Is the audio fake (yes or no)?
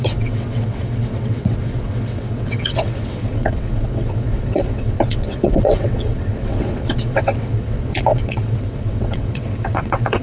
yes